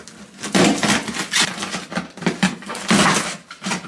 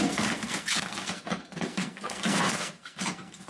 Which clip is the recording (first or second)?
first